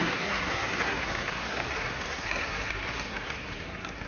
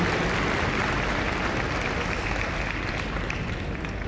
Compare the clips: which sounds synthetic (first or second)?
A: first